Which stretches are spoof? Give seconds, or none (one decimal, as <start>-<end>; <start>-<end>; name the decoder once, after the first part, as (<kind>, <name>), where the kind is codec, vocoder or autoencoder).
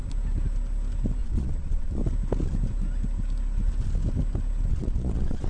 1.2-2.0 (vocoder, Vocos); 4.7-5.5